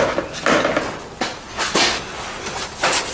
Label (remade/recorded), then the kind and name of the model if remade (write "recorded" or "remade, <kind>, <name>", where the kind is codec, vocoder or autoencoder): recorded